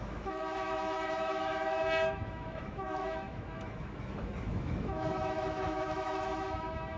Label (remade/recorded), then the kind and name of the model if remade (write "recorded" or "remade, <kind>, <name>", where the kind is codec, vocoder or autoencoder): remade, autoencoder, DAC-VAE